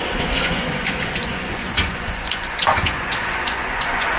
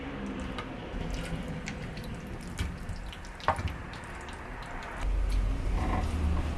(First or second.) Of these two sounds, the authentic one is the second